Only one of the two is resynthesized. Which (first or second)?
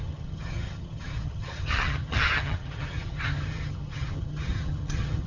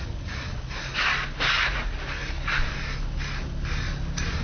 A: first